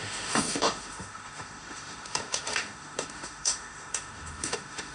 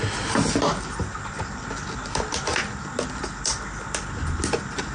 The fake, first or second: first